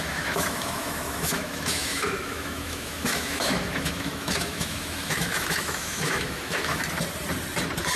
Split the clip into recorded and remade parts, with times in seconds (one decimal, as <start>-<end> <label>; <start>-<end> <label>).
0.0-6.8 remade; 6.8-8.0 recorded